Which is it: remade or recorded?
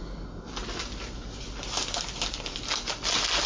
recorded